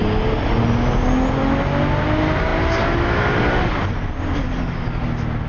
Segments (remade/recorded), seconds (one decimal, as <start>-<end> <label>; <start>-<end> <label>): 0.0-5.5 recorded